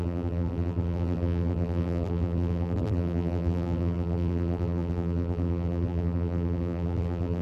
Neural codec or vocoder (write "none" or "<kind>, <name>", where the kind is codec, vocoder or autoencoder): vocoder, BigVGAN v2